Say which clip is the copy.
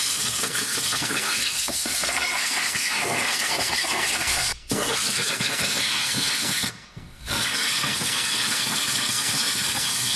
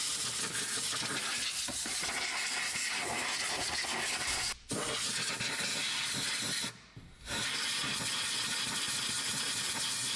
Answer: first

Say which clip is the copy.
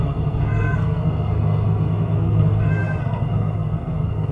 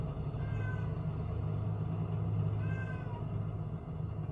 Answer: first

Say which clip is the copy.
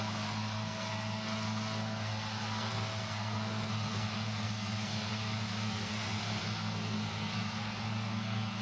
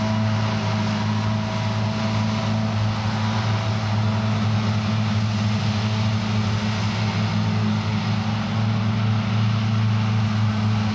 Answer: first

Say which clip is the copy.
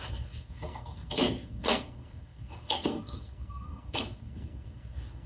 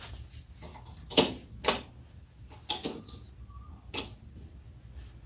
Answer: first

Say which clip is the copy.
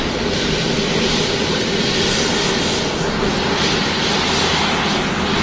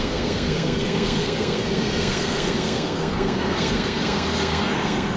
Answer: second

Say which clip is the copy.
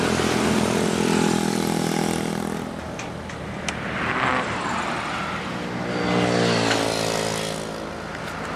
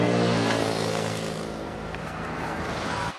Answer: second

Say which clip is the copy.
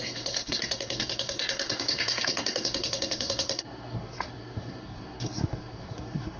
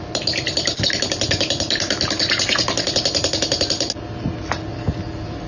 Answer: first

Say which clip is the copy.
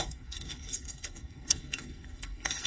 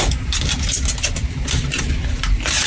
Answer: first